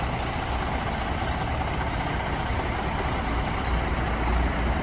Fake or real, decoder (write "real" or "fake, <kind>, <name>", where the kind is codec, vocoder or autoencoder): real